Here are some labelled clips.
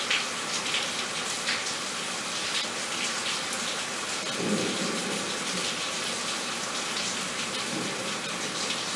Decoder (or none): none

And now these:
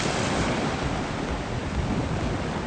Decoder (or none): none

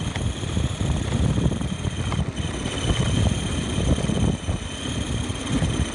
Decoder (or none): none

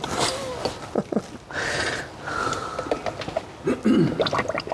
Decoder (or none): none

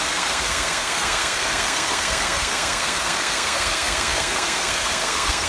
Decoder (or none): codec, SNAC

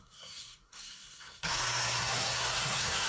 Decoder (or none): codec, SNAC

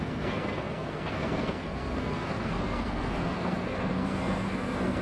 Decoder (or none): codec, SNAC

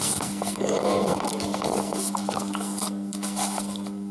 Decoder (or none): codec, SNAC